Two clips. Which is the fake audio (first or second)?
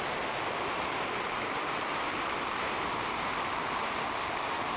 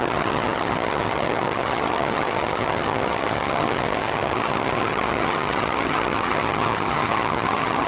second